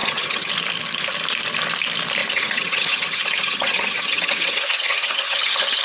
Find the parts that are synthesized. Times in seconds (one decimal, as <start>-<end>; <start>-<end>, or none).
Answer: 0.0-0.5; 2.2-5.8